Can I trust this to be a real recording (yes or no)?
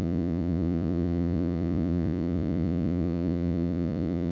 no